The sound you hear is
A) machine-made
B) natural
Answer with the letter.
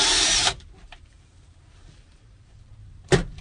A